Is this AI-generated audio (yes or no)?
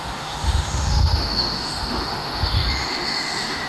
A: yes